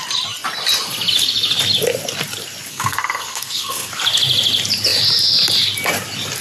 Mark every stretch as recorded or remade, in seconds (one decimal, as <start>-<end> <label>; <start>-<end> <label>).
0.0-2.7 recorded; 2.7-3.9 remade; 3.9-6.4 recorded